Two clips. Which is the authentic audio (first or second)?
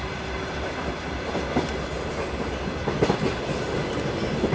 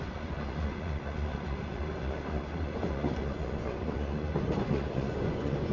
first